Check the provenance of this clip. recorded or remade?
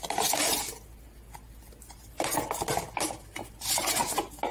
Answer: recorded